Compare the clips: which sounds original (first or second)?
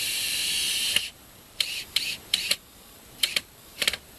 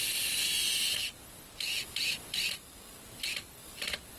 second